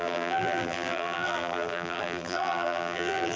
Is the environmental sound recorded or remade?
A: remade